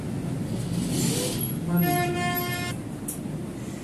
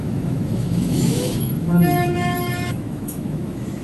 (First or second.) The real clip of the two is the first